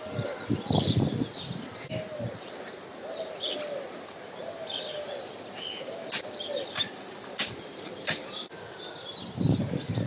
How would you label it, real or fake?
real